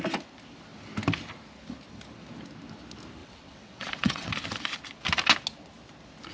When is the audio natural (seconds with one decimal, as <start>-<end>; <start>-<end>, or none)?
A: 0.0-3.2; 4.3-6.3